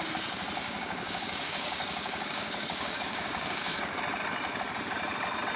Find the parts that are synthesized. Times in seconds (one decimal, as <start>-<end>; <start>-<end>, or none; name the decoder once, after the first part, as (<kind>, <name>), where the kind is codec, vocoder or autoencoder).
0.6-4.0 (codec, DAC)